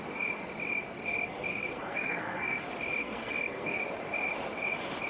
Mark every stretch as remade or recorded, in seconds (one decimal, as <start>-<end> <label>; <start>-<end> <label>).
0.0-1.5 recorded; 1.5-2.6 remade; 2.6-3.0 recorded; 3.0-3.8 remade; 3.8-5.1 recorded